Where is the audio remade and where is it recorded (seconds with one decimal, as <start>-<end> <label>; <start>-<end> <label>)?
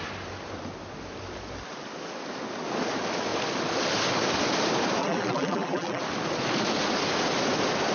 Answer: 0.0-5.0 recorded; 5.0-6.0 remade; 6.0-7.9 recorded